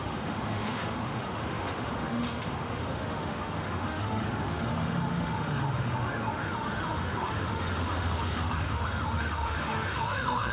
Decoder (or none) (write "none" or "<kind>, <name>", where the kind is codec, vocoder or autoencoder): autoencoder, DAC-VAE